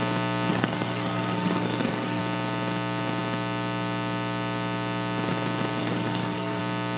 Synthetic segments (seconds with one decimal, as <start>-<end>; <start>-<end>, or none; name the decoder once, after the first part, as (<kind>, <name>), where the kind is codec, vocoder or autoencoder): 0.5-2.2 (codec, SNAC); 5.8-6.6